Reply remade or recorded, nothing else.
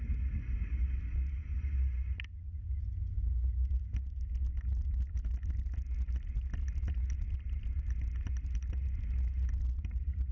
recorded